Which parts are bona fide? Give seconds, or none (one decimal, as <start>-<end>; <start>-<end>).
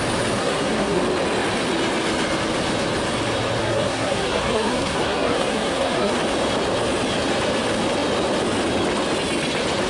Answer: 0.0-0.4; 1.0-3.6; 6.1-9.9